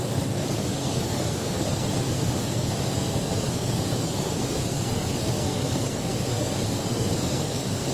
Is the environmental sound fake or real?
fake